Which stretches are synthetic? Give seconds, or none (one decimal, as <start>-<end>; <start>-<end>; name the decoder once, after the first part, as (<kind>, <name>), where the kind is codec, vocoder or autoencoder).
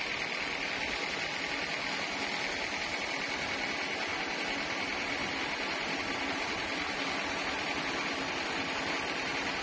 none